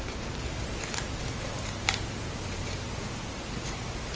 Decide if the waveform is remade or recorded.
remade